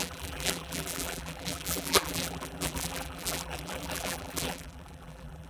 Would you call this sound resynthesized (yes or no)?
yes